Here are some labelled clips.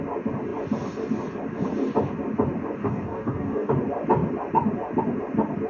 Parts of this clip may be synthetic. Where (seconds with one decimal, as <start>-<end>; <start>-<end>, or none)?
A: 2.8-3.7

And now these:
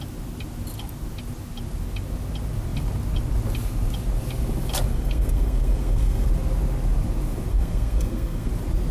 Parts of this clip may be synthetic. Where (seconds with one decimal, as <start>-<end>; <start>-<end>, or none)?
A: 4.9-6.3; 7.5-8.5

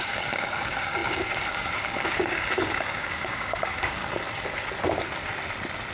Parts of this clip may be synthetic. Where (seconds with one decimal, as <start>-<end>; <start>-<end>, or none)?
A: 0.0-4.0